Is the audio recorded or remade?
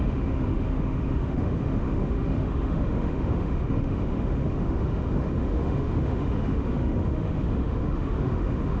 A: remade